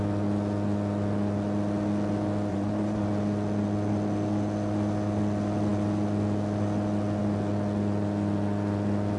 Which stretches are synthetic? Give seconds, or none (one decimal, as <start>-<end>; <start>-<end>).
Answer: 2.5-3.0